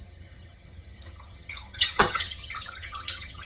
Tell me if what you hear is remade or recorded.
remade